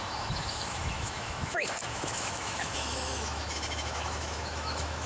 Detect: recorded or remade remade